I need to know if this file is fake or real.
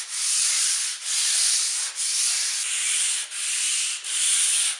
real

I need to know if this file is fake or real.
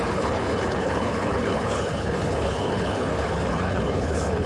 fake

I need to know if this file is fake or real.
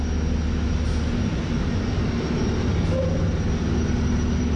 real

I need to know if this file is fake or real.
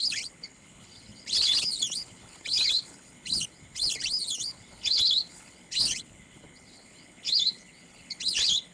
fake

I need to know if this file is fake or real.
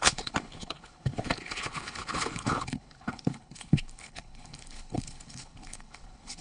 fake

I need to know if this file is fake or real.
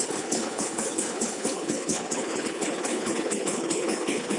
fake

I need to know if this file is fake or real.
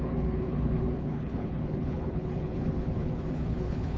fake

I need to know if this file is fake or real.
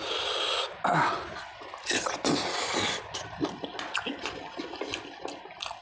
real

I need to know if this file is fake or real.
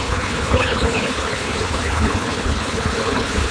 fake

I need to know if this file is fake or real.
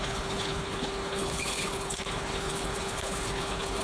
fake